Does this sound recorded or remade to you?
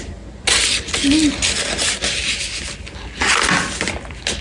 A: recorded